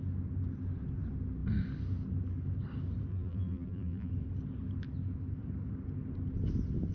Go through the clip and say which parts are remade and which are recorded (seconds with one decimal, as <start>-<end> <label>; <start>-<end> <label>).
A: 0.0-3.1 recorded; 3.1-4.1 remade; 4.1-6.9 recorded